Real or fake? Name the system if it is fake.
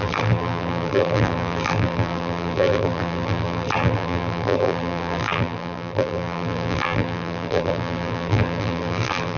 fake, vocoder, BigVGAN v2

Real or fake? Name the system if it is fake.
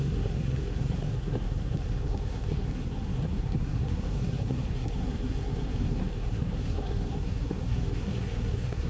fake, codec, SNAC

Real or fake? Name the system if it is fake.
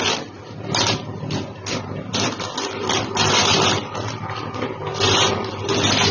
real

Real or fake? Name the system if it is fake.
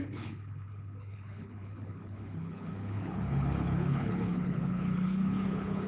fake, codec, HILCodec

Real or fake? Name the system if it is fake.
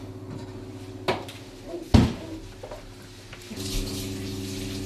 real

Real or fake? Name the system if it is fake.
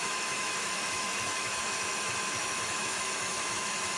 fake, autoencoder, DAC-VAE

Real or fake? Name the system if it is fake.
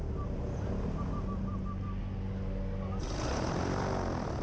real